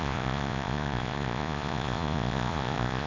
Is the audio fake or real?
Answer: fake